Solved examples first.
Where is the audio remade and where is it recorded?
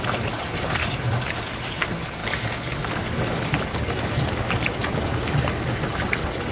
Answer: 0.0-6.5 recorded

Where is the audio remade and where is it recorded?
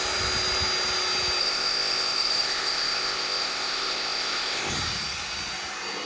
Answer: 0.0-1.4 recorded; 1.4-4.7 remade; 4.7-6.1 recorded